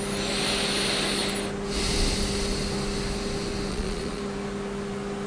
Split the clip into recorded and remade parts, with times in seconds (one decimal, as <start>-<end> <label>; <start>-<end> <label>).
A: 0.0-3.7 recorded; 3.7-4.2 remade; 4.2-5.3 recorded